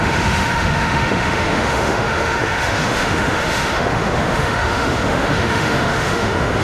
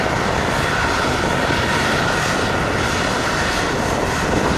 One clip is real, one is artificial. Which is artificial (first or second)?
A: first